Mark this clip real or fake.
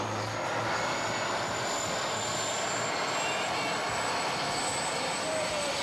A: real